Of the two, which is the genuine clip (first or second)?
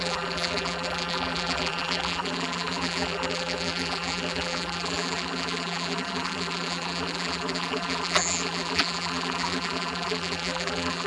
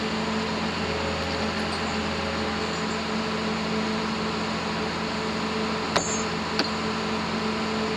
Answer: second